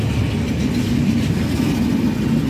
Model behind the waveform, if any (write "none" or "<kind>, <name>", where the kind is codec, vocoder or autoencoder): none